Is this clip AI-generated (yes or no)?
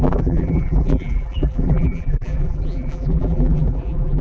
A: yes